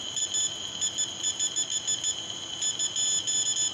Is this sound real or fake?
real